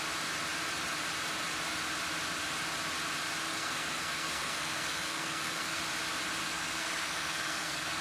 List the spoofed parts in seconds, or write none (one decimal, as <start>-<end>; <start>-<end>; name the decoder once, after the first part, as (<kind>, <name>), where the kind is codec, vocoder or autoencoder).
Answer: 3.5-5.8 (codec, SNAC); 6.4-8.0